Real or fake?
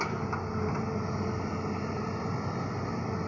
real